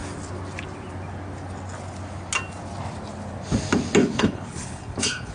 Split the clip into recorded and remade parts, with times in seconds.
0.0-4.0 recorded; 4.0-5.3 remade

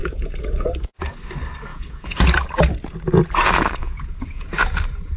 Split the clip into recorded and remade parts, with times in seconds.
0.0-1.0 remade; 1.0-1.7 recorded; 1.7-2.3 remade; 2.3-3.8 recorded; 3.8-4.8 remade; 4.8-5.2 recorded

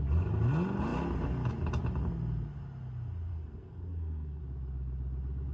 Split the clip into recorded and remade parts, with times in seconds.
0.0-3.3 recorded; 3.3-4.4 remade; 4.4-5.5 recorded